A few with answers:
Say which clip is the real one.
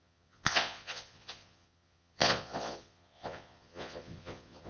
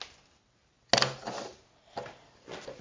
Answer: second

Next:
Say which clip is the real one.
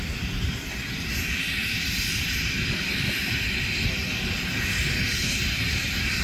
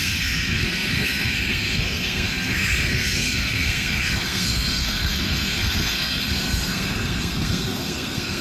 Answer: first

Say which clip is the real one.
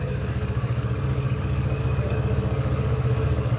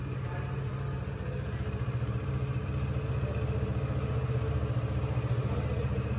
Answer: second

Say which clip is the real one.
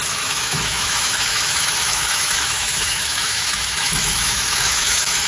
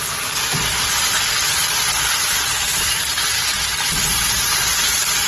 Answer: second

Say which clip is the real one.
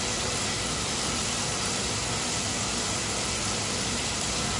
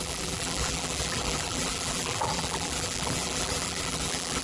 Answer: first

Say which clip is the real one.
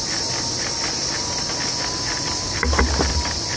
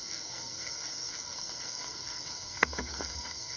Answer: first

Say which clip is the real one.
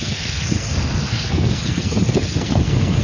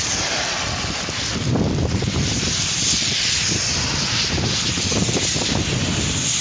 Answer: second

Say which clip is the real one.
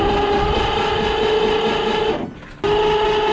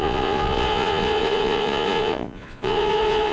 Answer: first